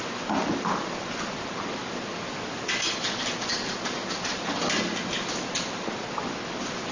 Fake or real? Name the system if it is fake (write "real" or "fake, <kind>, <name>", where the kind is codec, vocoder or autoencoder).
real